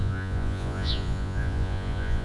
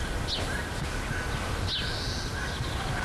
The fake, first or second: first